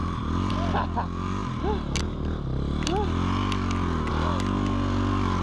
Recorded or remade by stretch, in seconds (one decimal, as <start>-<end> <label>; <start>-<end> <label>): 0.0-5.4 recorded